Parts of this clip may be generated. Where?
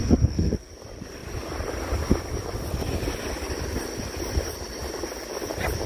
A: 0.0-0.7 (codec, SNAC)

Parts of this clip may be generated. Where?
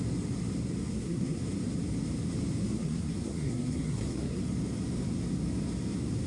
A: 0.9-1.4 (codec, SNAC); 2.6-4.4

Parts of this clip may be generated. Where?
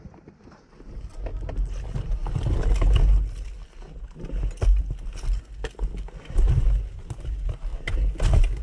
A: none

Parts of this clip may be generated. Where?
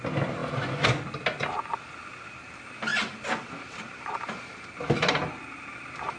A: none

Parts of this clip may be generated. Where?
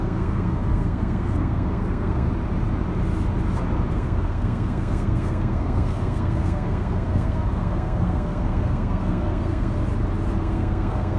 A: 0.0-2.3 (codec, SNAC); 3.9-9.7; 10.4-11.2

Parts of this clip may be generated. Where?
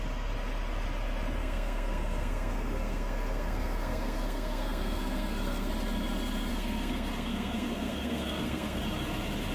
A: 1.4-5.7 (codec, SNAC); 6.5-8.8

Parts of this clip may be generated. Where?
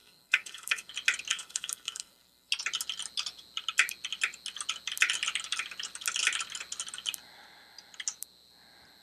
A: 0.0-0.9 (codec, SNAC); 1.3-2.5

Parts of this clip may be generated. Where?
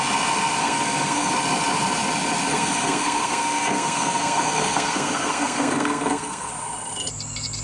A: 0.6-1.3 (codec, SNAC); 2.5-6.5